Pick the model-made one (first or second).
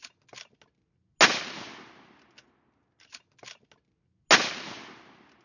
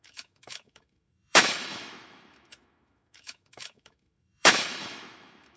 second